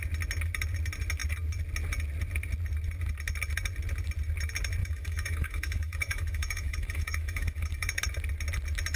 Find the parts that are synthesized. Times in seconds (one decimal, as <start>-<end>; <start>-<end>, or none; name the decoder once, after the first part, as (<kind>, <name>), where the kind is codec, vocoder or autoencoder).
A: 4.8-8.0 (autoencoder, DAC-VAE)